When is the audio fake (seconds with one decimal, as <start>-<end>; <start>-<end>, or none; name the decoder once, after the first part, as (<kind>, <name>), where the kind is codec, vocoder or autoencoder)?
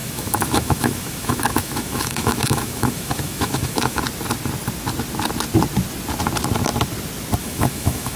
0.0-4.0 (autoencoder, DAC-VAE); 7.4-8.2